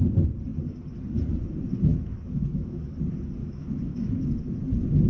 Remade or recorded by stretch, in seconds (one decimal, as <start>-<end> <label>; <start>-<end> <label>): 0.0-1.9 recorded; 1.9-2.8 remade; 2.8-3.4 recorded; 3.4-4.2 remade; 4.2-5.1 recorded